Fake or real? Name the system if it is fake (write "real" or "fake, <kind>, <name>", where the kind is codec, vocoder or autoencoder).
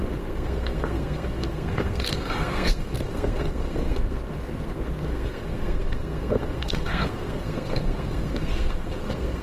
fake, codec, SNAC